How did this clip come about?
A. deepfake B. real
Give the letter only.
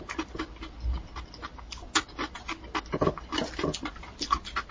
B